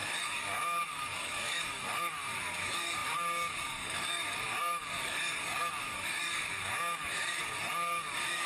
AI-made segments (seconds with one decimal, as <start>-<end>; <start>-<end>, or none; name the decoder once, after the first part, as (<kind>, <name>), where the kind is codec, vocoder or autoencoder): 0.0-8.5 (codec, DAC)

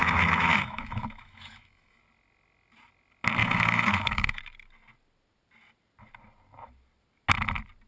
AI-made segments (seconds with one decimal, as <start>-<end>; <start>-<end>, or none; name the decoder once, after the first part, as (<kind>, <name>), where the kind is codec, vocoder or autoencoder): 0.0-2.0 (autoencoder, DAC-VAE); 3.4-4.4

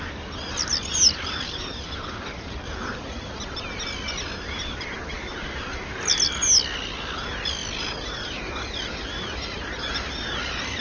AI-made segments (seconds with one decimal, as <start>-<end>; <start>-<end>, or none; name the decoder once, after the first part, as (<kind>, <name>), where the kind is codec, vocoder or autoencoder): none

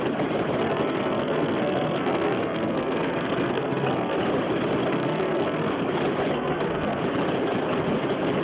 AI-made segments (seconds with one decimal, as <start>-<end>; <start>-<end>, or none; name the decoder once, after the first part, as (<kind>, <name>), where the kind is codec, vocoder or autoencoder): 0.6-4.2 (codec, SNAC); 4.9-5.7; 6.3-7.0

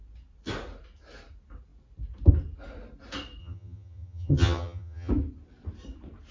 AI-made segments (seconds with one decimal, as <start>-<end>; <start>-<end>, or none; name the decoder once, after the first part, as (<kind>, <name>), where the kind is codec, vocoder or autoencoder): 3.4-5.1 (vocoder, HiFi-GAN)